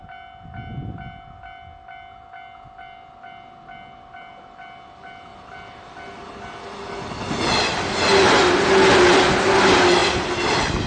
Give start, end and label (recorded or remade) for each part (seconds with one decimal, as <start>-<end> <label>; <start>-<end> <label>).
0.0-10.0 recorded; 10.0-10.9 remade